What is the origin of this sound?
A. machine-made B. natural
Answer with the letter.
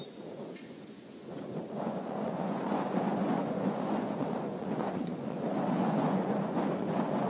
A